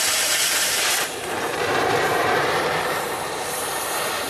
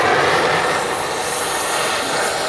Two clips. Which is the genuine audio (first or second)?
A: second